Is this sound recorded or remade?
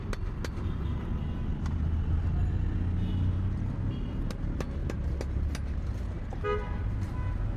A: recorded